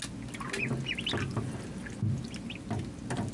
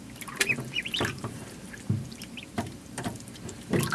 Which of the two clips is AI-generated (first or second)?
second